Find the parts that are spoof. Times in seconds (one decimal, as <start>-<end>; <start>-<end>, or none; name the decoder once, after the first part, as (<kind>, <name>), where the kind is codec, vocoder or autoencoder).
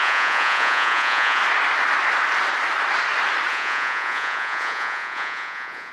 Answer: 0.0-1.4 (vocoder, Vocos); 3.5-5.9